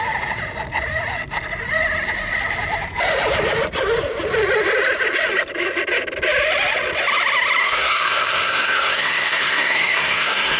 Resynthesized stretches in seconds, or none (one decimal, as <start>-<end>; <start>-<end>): 7.6-10.6